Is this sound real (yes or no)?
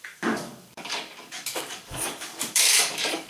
no